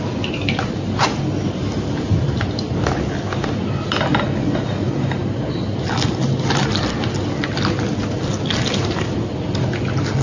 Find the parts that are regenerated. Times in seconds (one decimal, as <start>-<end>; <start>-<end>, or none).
none